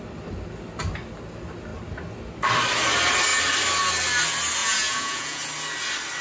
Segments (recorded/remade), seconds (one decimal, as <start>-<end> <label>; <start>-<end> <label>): 0.0-4.6 recorded; 4.6-5.4 remade; 5.4-6.2 recorded